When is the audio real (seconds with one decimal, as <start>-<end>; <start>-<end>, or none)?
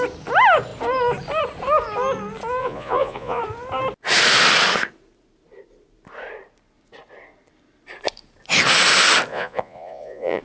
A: 0.0-2.6; 3.4-9.3